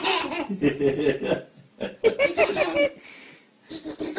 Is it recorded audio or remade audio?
recorded